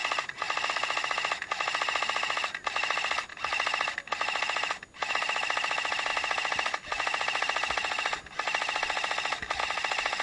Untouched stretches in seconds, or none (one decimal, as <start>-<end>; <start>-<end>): 0.0-10.2